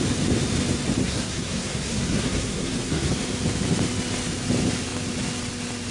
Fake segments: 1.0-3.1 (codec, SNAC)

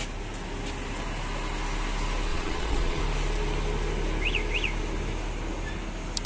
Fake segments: 2.3-3.0 (vocoder, Vocos)

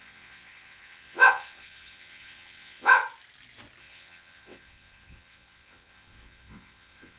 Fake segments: 0.0-3.0 (vocoder, WaveNeXt); 3.8-7.2

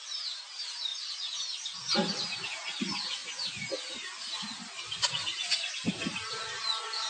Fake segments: none

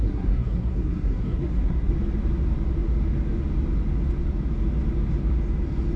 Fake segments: 0.0-1.9 (codec, SNAC)